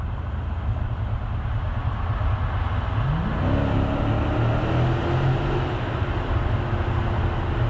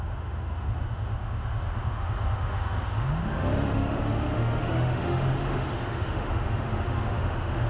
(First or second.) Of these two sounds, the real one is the first